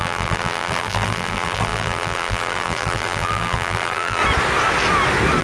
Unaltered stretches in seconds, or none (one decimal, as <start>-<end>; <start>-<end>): 4.2-5.4

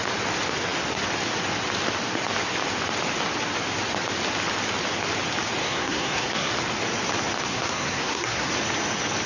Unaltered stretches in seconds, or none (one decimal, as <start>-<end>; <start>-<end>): 0.0-5.6; 6.5-7.5; 8.5-9.3

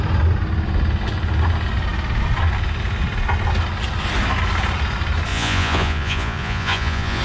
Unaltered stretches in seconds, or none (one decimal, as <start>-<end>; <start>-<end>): 0.0-5.3

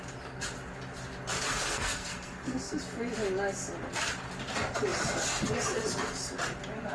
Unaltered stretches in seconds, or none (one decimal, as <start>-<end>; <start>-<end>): 0.0-1.5; 2.8-6.9

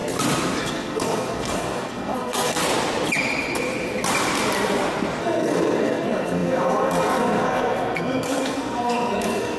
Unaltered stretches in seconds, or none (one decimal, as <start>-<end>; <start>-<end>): 0.0-0.6; 2.6-5.2